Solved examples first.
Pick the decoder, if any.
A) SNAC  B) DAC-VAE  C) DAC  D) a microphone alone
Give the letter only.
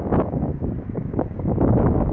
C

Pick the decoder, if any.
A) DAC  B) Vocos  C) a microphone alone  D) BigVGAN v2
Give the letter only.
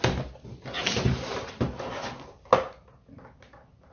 C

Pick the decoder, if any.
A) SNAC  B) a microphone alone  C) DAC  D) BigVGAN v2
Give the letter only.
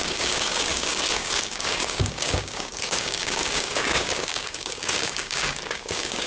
C